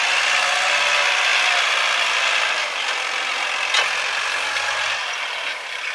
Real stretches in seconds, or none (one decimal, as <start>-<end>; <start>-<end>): 0.0-5.9